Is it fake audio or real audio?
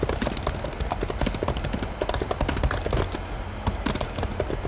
real